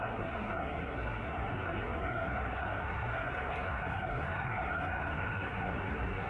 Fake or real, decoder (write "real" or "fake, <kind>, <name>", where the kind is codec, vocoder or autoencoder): fake, codec, SNAC